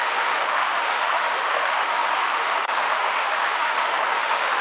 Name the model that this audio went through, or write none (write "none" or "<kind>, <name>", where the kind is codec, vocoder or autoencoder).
autoencoder, DAC-VAE